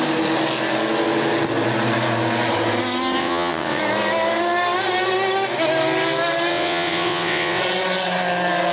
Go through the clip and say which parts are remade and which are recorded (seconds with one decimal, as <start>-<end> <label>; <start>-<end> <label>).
0.0-3.2 recorded; 3.2-3.8 remade; 3.8-6.5 recorded; 6.5-7.6 remade; 7.6-8.7 recorded